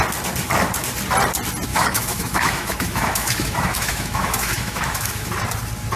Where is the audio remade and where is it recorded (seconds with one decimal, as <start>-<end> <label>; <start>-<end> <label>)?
0.0-1.7 recorded; 1.7-5.3 remade; 5.3-6.0 recorded

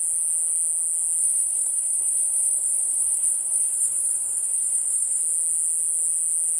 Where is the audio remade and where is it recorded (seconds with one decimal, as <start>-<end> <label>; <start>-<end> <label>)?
0.0-1.2 recorded; 1.2-5.2 remade; 5.2-6.6 recorded

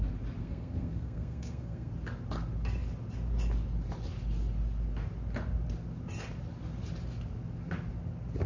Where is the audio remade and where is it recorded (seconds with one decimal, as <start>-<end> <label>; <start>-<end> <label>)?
0.0-0.4 recorded; 0.4-1.9 remade; 1.9-8.5 recorded

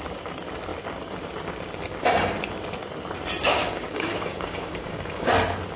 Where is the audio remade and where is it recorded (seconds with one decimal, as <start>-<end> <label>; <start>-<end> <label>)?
0.0-3.4 recorded; 3.4-5.3 remade; 5.3-5.8 recorded

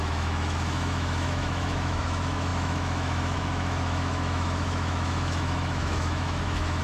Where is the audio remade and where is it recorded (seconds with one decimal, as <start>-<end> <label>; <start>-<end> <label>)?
0.0-6.8 remade